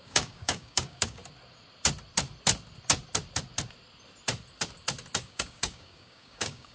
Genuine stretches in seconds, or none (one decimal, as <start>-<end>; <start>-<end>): 1.2-5.2